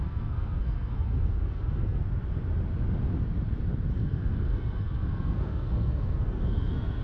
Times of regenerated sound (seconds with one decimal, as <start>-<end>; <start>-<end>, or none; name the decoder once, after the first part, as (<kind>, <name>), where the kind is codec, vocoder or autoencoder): 0.0-2.0 (codec, SNAC); 3.9-7.0